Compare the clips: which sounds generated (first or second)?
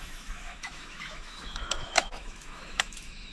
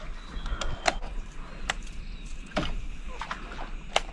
first